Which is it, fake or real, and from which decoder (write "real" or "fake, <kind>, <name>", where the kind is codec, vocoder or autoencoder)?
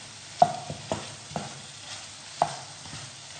real